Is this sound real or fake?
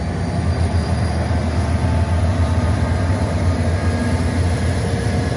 real